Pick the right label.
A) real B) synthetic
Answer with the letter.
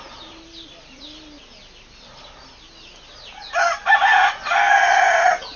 A